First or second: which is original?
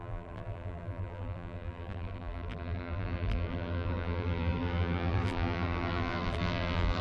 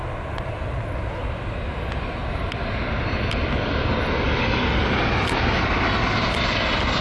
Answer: second